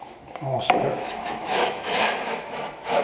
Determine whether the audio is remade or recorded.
remade